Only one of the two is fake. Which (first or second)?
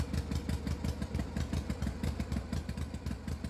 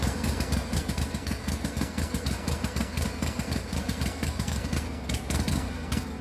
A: second